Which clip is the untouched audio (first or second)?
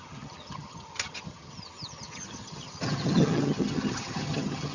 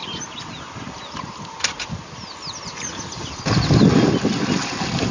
second